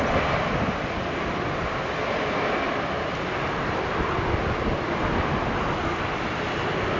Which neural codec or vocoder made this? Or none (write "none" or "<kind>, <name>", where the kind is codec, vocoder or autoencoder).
none